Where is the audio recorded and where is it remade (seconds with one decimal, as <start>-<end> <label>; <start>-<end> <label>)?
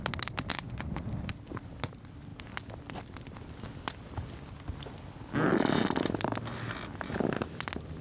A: 0.0-0.5 recorded; 0.5-1.0 remade; 1.0-8.0 recorded